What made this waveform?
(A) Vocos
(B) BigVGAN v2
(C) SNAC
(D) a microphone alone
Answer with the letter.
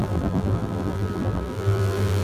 B